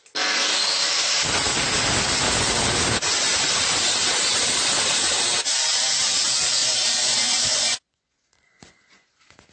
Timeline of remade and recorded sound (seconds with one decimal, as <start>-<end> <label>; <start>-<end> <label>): 0.0-6.6 recorded; 6.6-9.5 remade